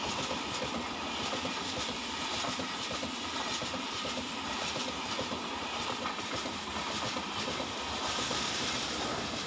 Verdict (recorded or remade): remade